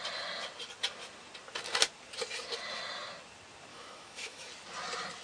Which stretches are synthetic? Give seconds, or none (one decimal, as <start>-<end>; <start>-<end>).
3.7-4.5